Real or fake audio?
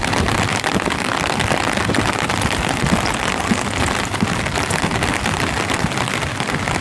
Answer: real